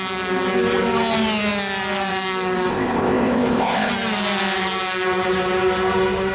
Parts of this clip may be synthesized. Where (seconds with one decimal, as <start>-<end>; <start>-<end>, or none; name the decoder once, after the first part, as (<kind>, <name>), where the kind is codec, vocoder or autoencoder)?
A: 2.7-3.9 (codec, ZipCodec)